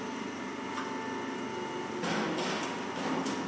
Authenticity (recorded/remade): recorded